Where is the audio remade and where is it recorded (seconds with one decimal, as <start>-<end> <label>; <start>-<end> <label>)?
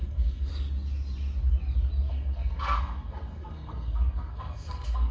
0.0-0.5 remade; 0.5-2.1 recorded; 2.1-5.1 remade